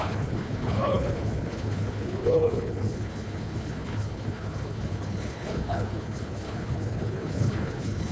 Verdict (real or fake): fake